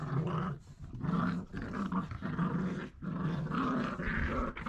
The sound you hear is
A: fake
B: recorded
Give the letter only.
B